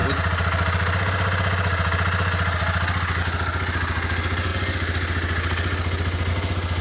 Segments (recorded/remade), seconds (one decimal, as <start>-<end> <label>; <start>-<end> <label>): 0.0-6.8 recorded